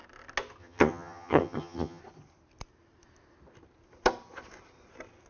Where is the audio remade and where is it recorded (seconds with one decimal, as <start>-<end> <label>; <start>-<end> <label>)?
0.0-0.6 recorded; 0.6-2.0 remade; 2.0-5.3 recorded